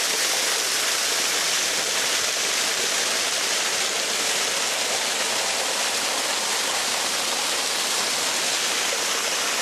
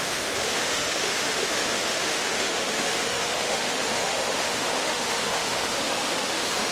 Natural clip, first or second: first